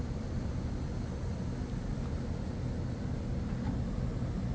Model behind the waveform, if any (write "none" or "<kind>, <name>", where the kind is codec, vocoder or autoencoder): none